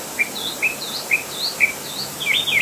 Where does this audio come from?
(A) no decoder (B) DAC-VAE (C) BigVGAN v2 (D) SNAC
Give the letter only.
A